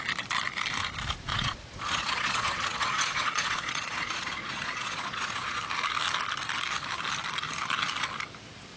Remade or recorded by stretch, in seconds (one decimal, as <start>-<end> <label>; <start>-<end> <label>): 0.0-1.3 recorded; 1.3-5.6 remade; 5.6-8.8 recorded